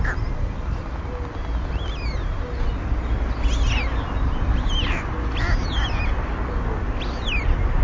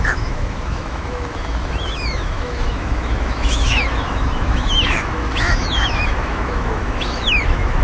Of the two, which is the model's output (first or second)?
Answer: second